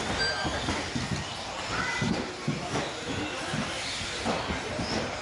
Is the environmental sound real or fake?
real